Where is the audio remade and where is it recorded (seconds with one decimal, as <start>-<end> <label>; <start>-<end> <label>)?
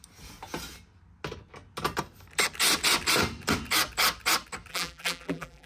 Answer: 0.0-4.7 recorded; 4.7-5.7 remade